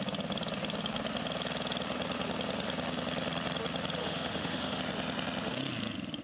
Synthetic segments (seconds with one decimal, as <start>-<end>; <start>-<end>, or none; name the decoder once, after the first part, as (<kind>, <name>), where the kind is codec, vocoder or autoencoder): 4.0-4.8 (autoencoder, DAC-VAE)